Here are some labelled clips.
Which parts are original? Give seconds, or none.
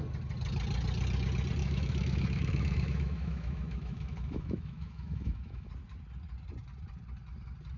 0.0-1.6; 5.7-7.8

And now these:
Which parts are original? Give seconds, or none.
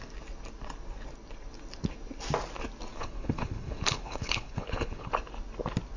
0.0-2.9; 5.1-6.0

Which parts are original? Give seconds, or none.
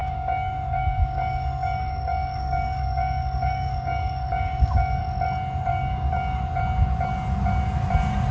5.0-5.7; 6.4-8.3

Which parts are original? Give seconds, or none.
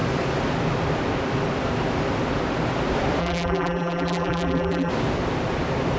0.0-3.2; 4.9-6.0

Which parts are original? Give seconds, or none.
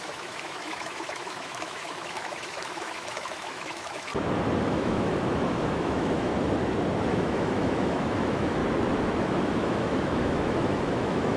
4.1-4.6; 6.3-7.1; 8.6-9.2